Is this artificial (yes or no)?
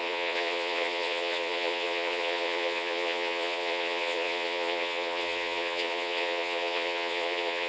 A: yes